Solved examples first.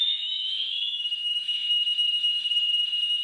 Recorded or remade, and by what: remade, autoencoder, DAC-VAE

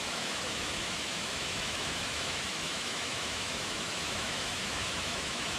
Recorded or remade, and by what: remade, autoencoder, DAC-VAE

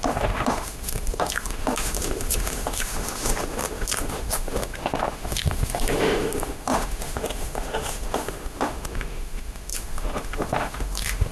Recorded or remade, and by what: remade, autoencoder, DAC-VAE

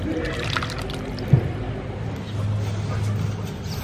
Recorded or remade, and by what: recorded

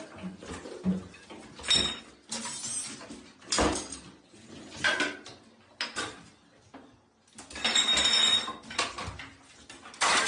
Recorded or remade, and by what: recorded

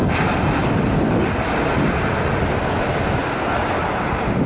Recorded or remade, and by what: recorded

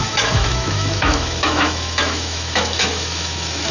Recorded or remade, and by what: remade, autoencoder, DAC-VAE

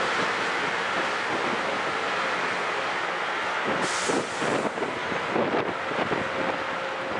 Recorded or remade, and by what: recorded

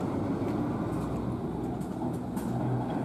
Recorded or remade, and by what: recorded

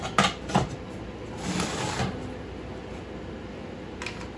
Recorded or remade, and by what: recorded